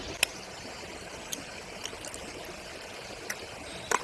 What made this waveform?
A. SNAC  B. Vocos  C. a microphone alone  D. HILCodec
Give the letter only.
C